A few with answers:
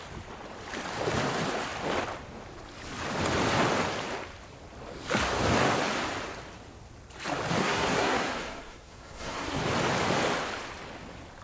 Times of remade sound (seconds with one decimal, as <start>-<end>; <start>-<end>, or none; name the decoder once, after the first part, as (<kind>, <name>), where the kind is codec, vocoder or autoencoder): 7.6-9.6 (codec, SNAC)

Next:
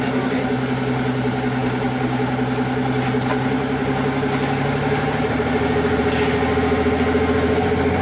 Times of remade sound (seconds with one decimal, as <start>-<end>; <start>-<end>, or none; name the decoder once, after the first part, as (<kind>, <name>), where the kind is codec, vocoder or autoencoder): none

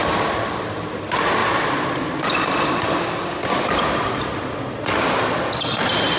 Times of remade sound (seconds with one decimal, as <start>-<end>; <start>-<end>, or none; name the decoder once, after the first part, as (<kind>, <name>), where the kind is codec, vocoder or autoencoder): none

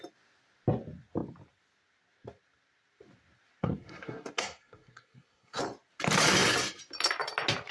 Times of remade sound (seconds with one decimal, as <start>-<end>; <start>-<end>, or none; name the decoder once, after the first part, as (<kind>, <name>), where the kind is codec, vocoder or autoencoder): 3.6-5.6 (codec, SNAC)

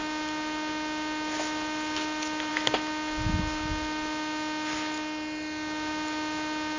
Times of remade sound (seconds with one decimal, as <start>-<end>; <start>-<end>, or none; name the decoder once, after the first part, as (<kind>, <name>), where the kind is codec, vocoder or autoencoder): none

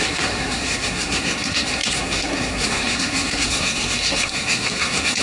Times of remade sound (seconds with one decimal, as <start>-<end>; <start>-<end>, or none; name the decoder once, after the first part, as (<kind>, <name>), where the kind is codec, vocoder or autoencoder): 0.0-5.2 (codec, SNAC)